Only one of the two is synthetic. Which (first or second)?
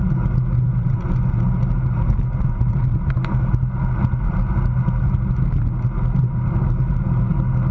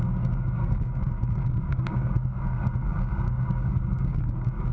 second